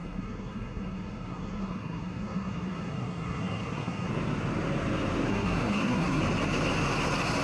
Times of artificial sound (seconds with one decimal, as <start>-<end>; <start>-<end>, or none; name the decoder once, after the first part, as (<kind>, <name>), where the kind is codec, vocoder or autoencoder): 0.0-4.1 (codec, SNAC); 5.3-6.2